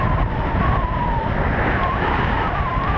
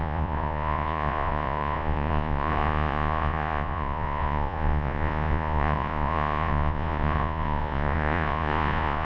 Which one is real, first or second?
first